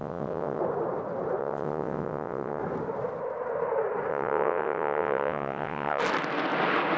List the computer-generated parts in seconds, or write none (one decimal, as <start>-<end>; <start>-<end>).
0.0-0.6; 1.4-2.6; 4.1-6.0